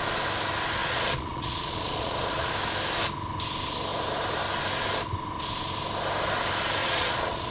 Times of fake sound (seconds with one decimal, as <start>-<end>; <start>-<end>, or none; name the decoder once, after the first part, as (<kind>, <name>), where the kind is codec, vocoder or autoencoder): 0.8-2.5 (vocoder, Vocos); 6.8-7.5